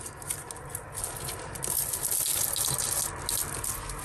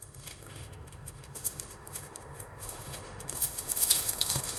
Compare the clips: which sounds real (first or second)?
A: first